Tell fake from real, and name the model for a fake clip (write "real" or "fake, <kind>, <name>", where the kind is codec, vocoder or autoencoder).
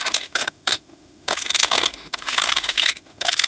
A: fake, autoencoder, DAC-VAE